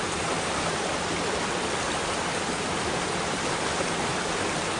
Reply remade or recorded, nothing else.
recorded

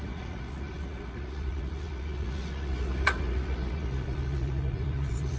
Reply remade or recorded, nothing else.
remade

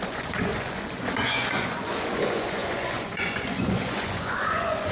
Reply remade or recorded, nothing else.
remade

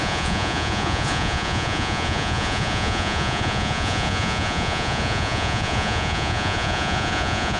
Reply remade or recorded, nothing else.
remade